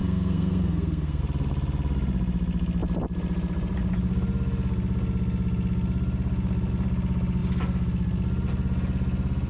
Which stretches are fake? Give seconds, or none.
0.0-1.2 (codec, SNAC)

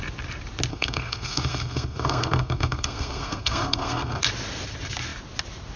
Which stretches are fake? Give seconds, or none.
0.7-4.2 (codec, SNAC)

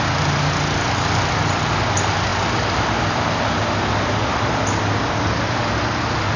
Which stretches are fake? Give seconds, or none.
none

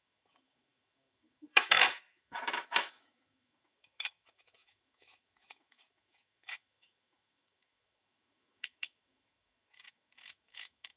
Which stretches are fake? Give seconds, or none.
0.0-11.0 (autoencoder, DAC-VAE)

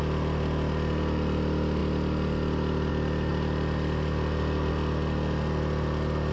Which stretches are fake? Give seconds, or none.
1.8-2.9 (vocoder, BigVGAN v2); 3.3-4.7

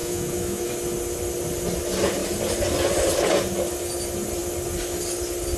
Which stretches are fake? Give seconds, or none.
0.0-0.7 (autoencoder, DAC-VAE)